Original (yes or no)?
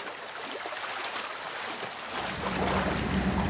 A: yes